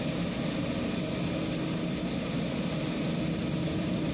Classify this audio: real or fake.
real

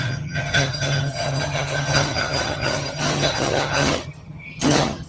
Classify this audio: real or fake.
fake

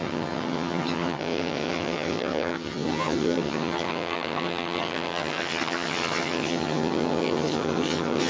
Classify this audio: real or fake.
fake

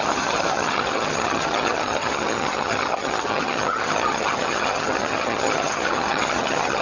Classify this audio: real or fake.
fake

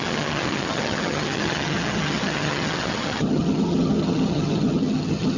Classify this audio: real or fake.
fake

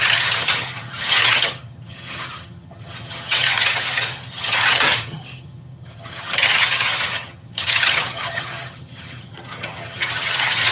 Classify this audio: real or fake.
fake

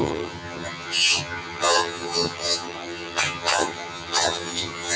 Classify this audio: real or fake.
fake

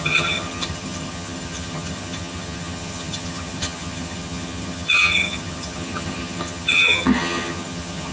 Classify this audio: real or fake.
fake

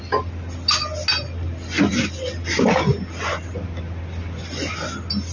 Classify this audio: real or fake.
real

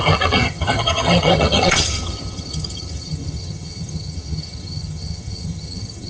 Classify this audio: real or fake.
fake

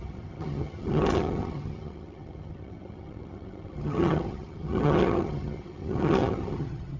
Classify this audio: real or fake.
fake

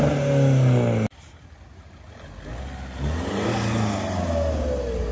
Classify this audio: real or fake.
real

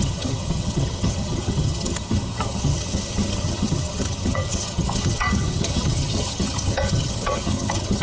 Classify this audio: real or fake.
fake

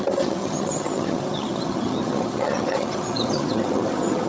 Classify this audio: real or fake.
fake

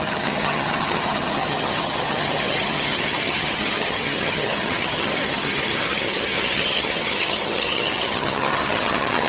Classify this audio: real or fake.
fake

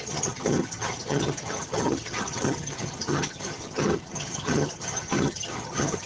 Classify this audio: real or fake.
fake